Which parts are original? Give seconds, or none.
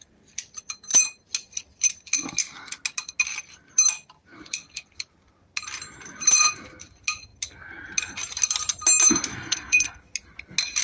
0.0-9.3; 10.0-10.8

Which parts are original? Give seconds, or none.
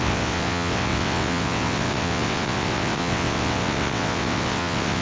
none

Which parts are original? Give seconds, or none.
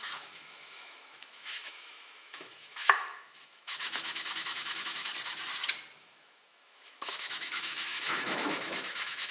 5.1-6.0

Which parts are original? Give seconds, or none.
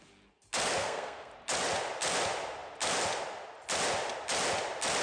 0.0-0.8; 1.3-5.0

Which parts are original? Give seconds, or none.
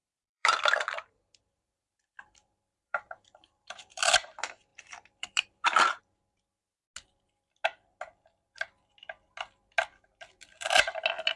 4.0-4.7; 6.0-11.4